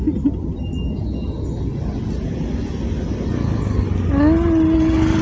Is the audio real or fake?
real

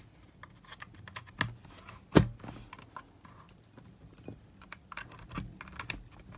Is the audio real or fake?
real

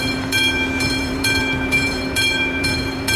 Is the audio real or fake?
fake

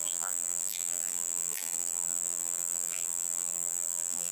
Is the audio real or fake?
fake